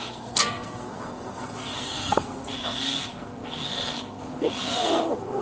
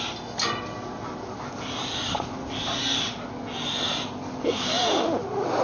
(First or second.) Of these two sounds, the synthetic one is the first